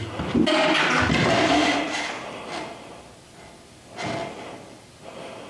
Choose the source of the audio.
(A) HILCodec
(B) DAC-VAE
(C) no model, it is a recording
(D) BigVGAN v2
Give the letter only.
C